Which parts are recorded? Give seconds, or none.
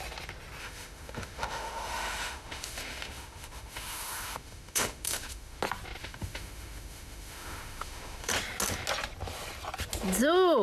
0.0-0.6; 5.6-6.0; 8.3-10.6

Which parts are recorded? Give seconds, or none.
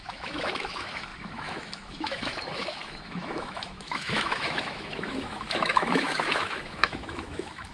none